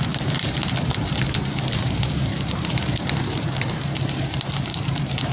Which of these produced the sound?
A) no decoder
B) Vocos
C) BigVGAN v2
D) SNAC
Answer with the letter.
C